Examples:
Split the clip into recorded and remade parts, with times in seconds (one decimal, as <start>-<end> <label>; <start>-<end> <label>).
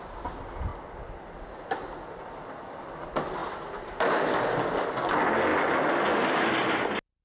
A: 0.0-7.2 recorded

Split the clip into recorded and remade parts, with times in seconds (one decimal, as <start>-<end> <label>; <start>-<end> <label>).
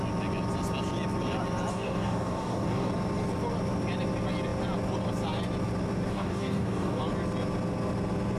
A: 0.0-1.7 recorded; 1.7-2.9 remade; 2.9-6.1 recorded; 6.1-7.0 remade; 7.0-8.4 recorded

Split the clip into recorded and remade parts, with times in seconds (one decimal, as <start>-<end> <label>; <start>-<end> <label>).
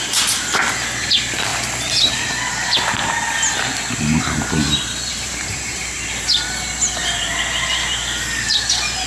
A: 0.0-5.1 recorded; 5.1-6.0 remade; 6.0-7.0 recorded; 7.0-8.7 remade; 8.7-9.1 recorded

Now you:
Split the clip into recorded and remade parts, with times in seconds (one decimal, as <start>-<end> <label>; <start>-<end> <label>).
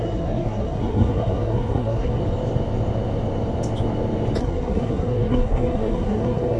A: 0.0-2.2 remade; 2.2-4.4 recorded; 4.4-6.6 remade